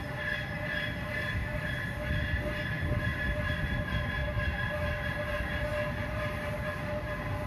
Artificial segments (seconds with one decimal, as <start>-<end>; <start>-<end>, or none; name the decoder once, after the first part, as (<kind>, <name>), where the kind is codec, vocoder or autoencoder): none